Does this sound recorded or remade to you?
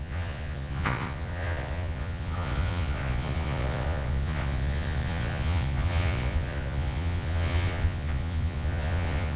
remade